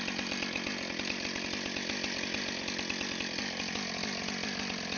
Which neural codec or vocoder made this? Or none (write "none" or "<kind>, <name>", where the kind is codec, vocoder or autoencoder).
none